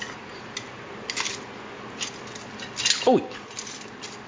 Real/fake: real